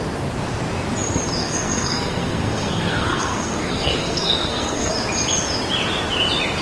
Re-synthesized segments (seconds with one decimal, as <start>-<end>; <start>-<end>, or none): 1.4-4.9